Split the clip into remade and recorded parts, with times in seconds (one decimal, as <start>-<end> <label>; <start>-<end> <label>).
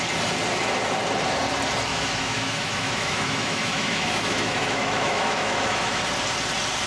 0.0-1.9 recorded; 1.9-6.0 remade; 6.0-6.9 recorded